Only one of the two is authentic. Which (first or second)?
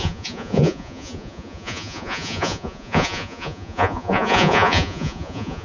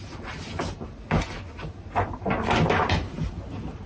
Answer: second